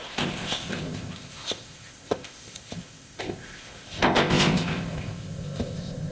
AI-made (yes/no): yes